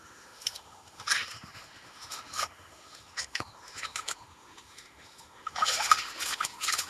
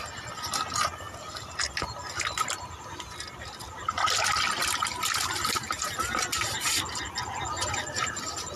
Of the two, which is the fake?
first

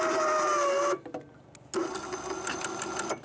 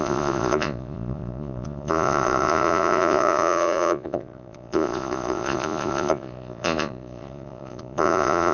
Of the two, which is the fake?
second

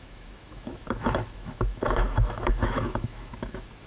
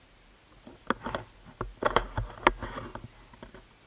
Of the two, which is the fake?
first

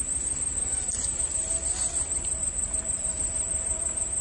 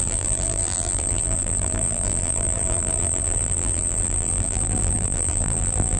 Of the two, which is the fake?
second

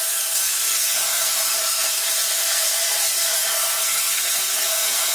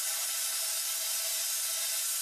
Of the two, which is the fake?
first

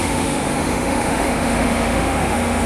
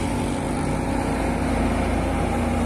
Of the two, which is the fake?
first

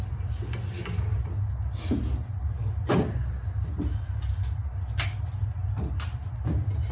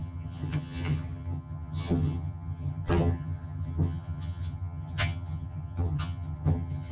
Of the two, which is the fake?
second